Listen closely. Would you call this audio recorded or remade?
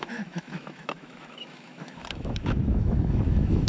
remade